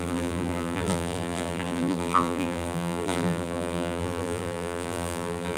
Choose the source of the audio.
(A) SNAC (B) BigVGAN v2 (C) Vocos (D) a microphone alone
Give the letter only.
B